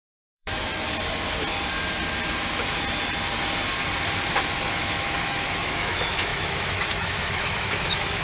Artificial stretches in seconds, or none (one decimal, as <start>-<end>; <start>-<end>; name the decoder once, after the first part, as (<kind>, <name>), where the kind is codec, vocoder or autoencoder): 0.0-0.7 (autoencoder, DAC-VAE); 4.7-8.2